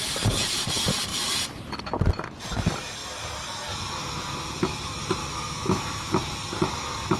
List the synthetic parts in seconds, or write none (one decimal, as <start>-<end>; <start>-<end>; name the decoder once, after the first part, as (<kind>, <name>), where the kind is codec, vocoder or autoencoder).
5.2-6.1 (autoencoder, DAC-VAE)